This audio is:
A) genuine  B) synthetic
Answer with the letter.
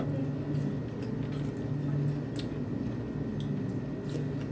A